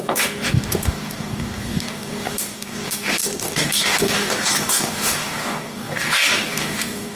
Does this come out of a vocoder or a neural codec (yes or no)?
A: yes